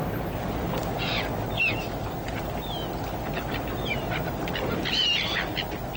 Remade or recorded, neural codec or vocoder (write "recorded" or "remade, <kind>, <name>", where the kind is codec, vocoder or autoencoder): recorded